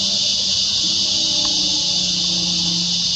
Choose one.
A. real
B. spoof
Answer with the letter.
A